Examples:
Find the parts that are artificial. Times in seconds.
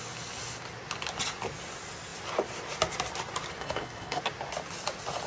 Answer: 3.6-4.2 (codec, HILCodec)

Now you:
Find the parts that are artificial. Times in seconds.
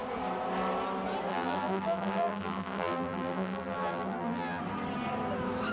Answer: 1.3-4.6 (vocoder, BigVGAN v2)